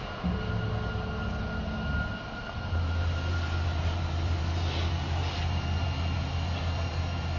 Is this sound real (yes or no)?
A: yes